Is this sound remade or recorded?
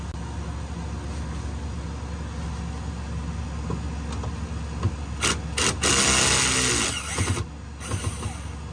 recorded